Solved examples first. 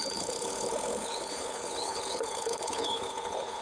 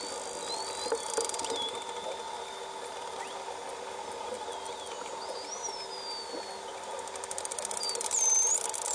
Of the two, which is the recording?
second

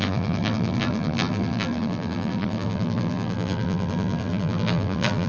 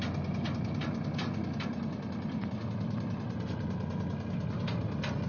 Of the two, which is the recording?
second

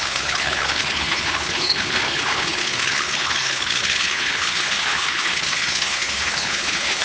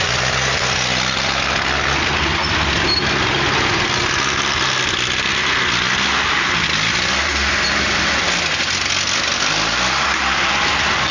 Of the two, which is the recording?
second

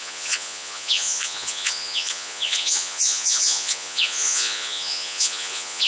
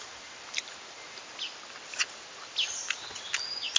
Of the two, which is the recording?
second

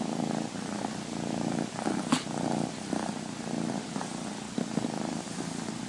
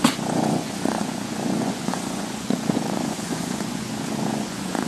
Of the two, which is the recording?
first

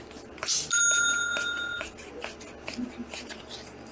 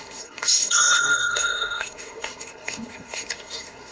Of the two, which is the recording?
first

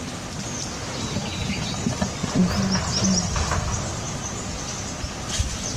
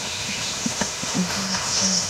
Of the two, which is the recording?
first